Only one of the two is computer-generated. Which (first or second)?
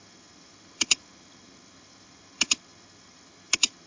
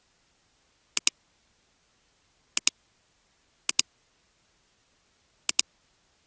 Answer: first